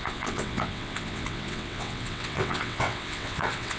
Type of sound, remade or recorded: remade